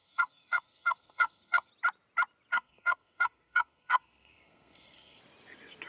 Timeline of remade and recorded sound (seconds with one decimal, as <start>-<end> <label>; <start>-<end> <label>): 0.0-1.7 remade; 1.7-2.5 recorded; 2.5-5.2 remade; 5.2-5.9 recorded